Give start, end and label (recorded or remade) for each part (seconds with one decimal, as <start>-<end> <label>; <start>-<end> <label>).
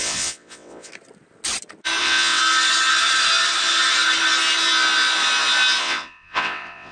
0.0-0.9 remade; 0.9-2.0 recorded; 2.0-2.4 remade; 2.4-5.8 recorded; 5.8-6.9 remade